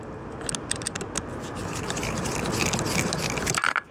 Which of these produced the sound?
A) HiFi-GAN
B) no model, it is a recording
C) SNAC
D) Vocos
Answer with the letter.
B